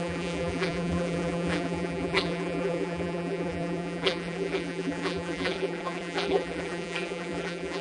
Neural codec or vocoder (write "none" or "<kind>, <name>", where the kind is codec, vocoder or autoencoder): vocoder, BigVGAN v2